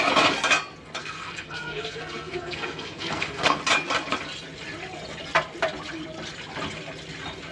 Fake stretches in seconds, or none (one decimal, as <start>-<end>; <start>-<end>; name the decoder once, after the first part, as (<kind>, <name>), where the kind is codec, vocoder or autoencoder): 1.0-3.6 (codec, SNAC)

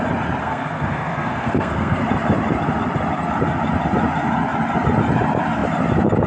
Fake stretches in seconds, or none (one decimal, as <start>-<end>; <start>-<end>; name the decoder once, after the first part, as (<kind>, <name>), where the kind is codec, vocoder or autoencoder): 0.4-2.0 (codec, SNAC)

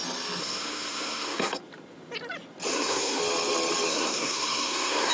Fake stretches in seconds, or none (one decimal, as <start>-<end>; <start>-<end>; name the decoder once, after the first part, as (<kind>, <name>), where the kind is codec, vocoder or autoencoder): 0.4-1.6 (codec, SNAC); 2.7-3.2; 3.9-5.1

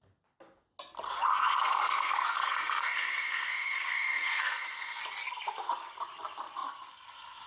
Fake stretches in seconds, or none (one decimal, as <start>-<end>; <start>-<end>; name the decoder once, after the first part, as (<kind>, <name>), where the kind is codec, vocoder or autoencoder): 1.3-5.0 (codec, SNAC)

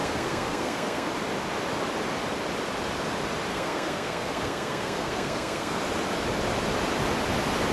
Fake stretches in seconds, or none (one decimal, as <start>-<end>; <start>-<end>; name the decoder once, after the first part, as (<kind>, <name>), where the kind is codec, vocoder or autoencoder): 0.0-1.1 (codec, SNAC); 3.5-5.8